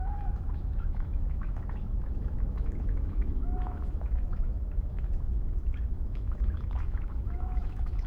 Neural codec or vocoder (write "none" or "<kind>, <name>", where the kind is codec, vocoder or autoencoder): autoencoder, DAC-VAE